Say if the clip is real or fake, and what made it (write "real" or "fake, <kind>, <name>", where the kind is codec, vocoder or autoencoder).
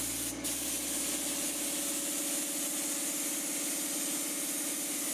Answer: real